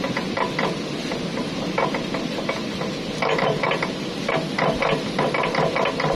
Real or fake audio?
real